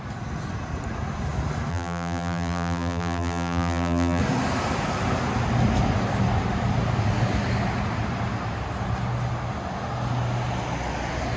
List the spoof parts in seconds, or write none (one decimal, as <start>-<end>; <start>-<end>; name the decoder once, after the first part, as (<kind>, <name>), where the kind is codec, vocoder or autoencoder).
1.7-4.2 (vocoder, BigVGAN v2)